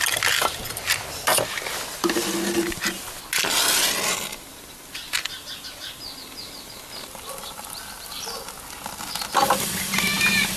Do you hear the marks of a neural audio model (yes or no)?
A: no